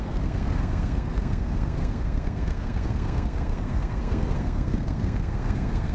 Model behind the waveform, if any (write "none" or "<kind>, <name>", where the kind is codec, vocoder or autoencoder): codec, SNAC